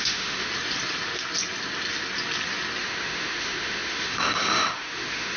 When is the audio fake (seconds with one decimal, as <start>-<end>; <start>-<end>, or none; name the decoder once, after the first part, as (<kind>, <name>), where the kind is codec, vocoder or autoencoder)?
0.0-0.5 (autoencoder, DAC-VAE); 2.8-5.4